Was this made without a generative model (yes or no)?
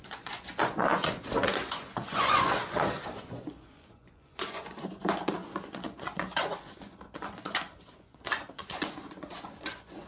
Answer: no